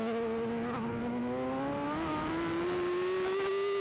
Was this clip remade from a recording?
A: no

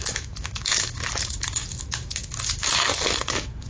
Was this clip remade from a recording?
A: yes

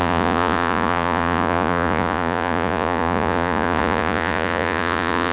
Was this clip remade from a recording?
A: yes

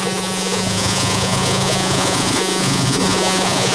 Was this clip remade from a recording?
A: yes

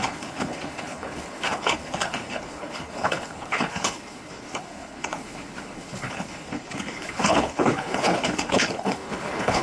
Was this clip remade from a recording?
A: yes